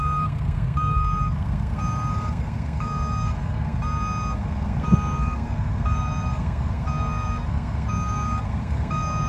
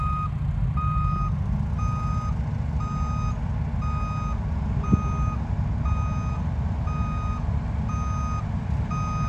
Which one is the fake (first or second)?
first